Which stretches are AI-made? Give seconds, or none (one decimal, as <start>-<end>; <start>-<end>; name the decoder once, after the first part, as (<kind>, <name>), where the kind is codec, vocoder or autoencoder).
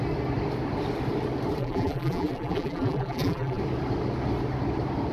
1.6-3.6 (vocoder, BigVGAN v2)